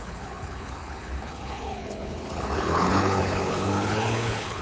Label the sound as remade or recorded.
remade